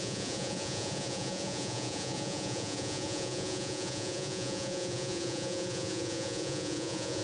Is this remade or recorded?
remade